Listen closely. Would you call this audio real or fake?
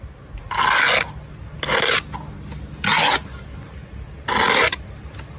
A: real